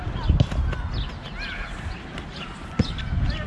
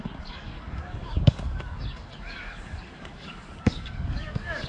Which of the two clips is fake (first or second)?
second